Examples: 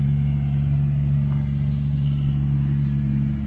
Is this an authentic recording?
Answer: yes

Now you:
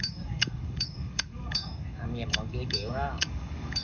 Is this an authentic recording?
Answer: no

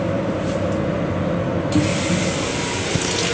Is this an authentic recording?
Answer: yes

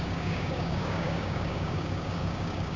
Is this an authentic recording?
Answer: no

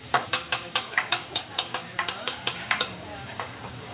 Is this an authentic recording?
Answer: no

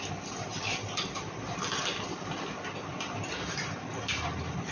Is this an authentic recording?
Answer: yes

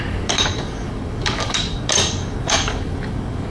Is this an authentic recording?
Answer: no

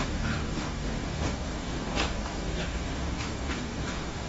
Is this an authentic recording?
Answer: no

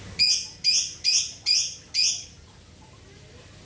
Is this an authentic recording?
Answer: yes